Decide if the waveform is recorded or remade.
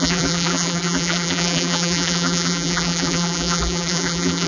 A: remade